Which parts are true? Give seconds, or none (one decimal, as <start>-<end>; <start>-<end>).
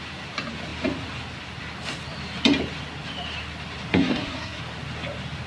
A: 0.0-3.9; 4.6-5.5